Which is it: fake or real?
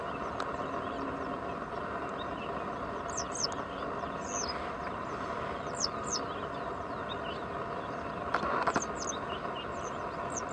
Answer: real